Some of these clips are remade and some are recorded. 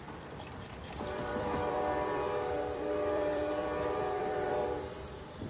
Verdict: remade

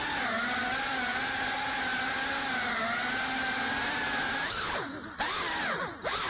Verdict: recorded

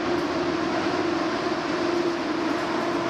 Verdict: remade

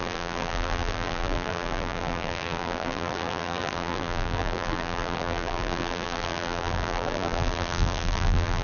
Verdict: remade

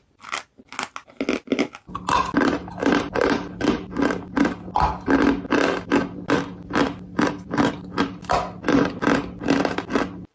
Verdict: recorded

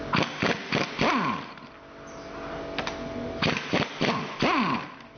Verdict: recorded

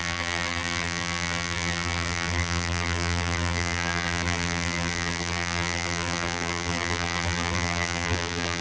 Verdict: remade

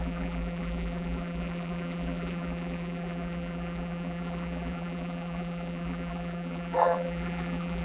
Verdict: remade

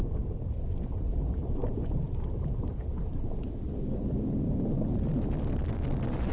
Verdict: recorded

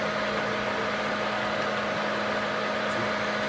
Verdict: recorded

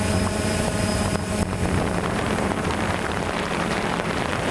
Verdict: remade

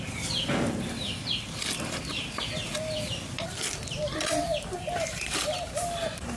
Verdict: remade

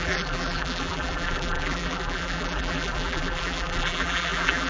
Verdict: remade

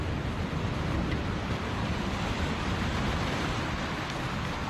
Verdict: recorded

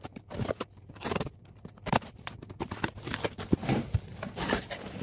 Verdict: remade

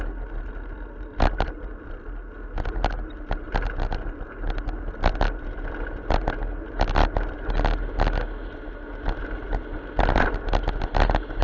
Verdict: recorded